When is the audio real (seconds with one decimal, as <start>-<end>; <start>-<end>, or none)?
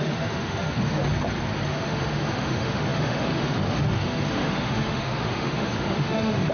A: 1.0-1.7